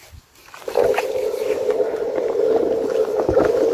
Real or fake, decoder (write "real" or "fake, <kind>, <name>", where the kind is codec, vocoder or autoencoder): real